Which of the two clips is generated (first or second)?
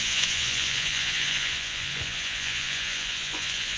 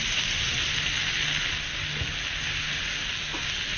first